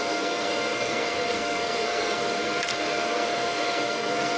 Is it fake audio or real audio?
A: fake